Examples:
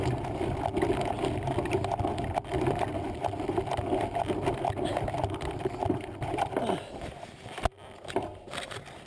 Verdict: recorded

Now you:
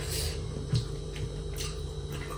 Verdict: remade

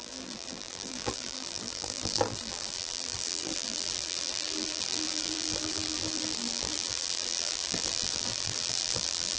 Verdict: remade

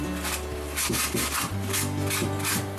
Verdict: recorded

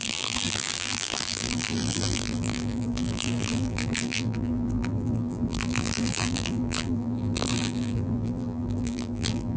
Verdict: remade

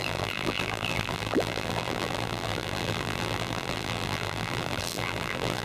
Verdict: remade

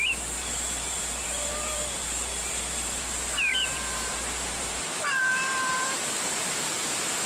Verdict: remade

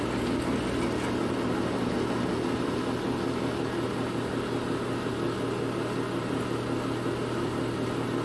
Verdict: recorded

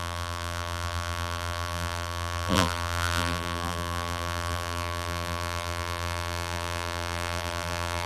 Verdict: remade